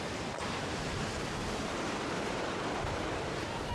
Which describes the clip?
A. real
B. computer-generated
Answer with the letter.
B